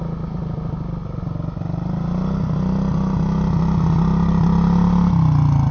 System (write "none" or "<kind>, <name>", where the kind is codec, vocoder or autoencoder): none